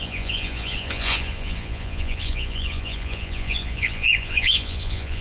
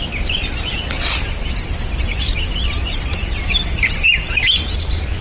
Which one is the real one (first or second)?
second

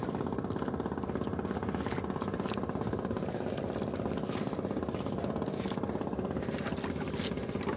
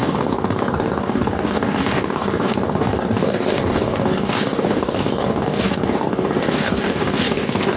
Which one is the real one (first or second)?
first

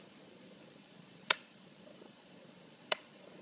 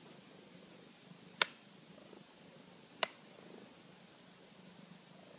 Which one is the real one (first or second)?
second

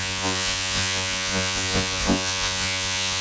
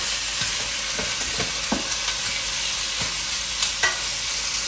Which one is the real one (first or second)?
second